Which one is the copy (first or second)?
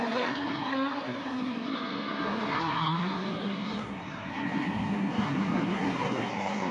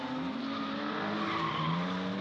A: first